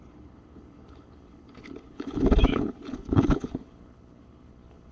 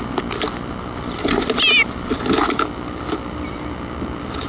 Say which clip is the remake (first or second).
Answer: first